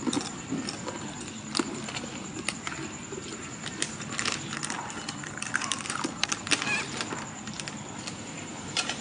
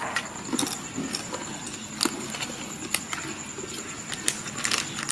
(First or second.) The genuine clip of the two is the second